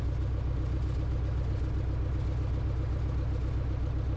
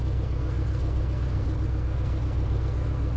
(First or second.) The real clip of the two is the first